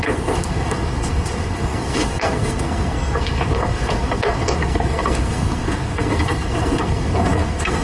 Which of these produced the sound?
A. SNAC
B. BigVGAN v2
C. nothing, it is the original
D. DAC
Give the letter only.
A